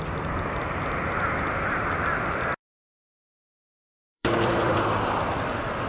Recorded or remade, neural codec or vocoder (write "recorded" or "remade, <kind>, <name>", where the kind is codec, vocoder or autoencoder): remade, vocoder, BigVGAN v2